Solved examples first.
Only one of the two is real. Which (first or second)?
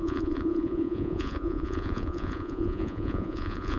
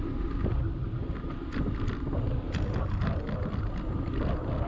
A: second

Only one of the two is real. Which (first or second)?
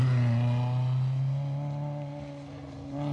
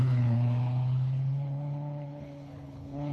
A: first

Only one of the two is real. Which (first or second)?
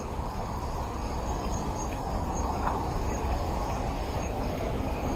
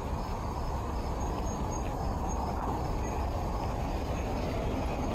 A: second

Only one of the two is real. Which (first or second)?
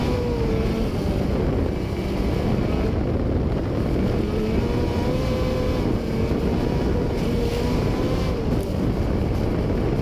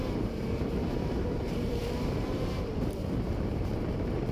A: first